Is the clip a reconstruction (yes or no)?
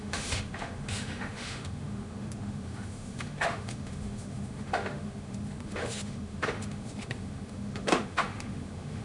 yes